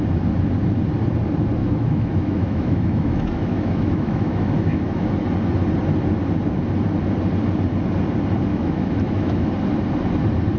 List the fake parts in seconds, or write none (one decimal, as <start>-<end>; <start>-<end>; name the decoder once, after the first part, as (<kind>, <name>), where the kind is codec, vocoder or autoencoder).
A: 1.6-5.1 (autoencoder, DAC-VAE); 8.5-9.5